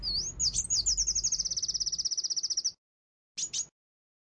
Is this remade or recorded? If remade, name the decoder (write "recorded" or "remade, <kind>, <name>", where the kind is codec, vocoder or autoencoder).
recorded